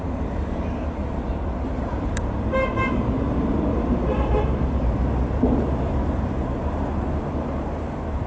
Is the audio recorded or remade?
remade